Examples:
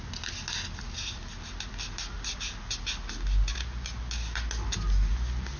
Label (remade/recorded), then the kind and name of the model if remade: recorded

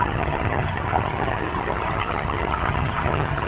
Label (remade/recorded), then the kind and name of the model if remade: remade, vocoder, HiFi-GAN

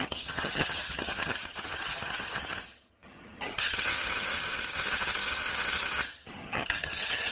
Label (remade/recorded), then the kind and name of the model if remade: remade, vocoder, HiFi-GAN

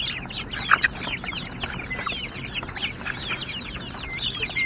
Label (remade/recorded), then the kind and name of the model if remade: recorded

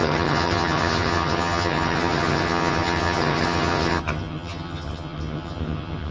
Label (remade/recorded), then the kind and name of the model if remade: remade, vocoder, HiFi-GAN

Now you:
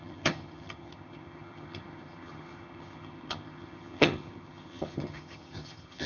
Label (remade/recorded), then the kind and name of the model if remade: remade, vocoder, HiFi-GAN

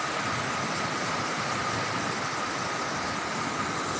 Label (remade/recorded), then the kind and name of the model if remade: recorded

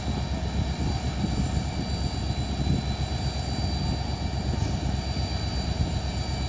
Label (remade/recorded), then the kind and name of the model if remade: recorded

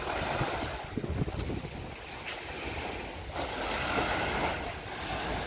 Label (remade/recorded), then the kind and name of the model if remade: recorded